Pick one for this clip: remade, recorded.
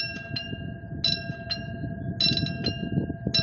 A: recorded